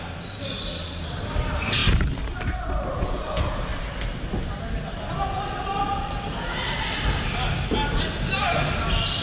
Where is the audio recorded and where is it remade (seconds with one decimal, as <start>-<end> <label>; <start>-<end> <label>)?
0.0-9.2 recorded